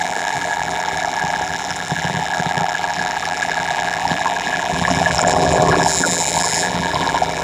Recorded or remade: remade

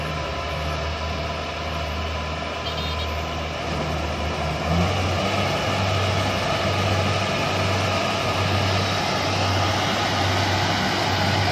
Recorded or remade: recorded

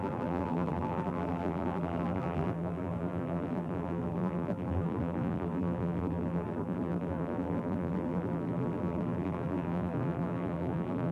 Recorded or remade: remade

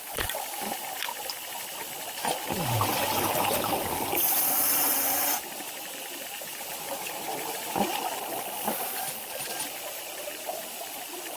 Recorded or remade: recorded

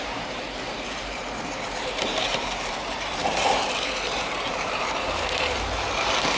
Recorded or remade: remade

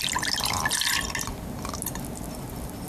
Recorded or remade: recorded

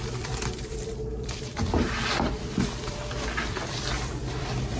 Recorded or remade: remade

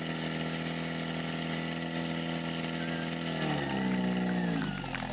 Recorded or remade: recorded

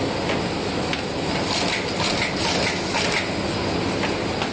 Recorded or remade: recorded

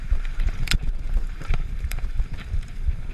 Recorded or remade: remade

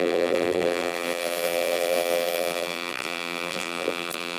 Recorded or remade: remade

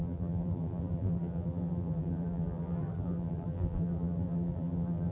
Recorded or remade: remade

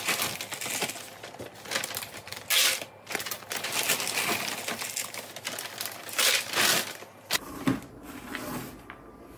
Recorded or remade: recorded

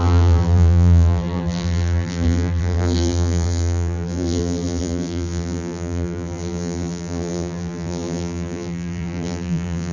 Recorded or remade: remade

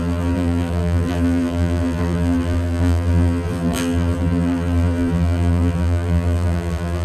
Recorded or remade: remade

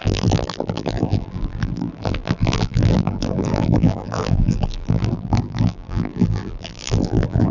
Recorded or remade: remade